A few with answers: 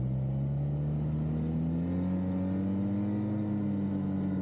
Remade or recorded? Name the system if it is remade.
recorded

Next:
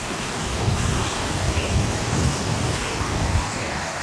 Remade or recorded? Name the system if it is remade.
remade, codec, DAC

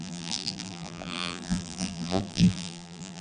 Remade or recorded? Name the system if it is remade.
remade, vocoder, BigVGAN v2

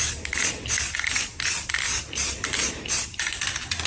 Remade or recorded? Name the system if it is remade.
recorded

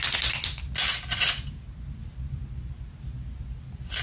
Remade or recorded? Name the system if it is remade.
recorded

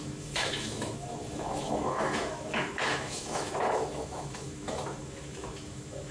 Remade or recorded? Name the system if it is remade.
remade, autoencoder, DAC-VAE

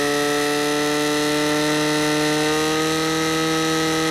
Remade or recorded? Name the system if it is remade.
recorded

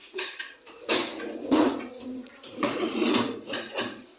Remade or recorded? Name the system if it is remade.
remade, vocoder, Vocos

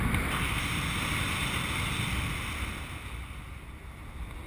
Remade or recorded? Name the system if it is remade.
recorded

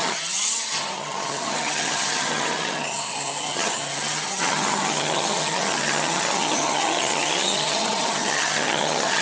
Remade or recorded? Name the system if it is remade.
remade, vocoder, HiFi-GAN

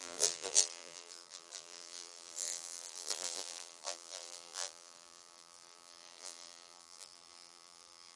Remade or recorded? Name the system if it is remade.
remade, vocoder, BigVGAN v2